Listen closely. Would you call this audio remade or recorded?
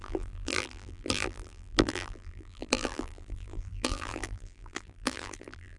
remade